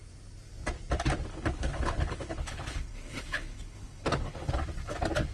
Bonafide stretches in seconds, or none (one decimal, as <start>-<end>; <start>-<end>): 0.0-1.3; 4.5-5.3